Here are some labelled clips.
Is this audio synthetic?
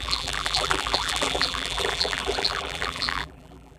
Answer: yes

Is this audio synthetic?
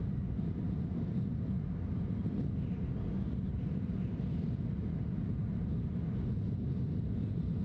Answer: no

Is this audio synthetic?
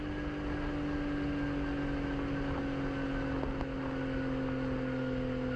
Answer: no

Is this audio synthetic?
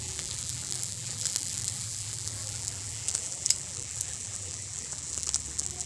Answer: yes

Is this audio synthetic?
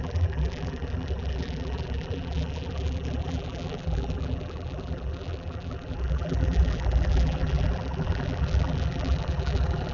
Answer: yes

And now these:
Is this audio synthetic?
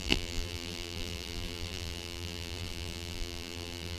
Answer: yes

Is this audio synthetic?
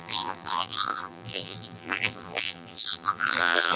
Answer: yes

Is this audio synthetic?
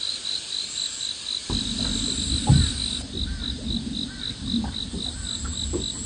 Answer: no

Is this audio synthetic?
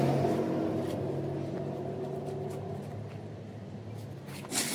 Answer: no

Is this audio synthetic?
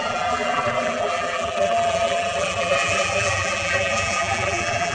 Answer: yes